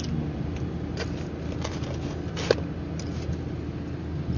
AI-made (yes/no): no